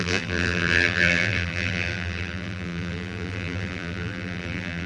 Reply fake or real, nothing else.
fake